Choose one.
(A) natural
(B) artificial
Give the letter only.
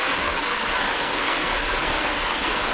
B